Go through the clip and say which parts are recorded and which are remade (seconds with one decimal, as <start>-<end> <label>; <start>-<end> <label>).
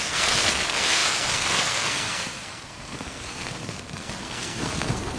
0.0-5.2 remade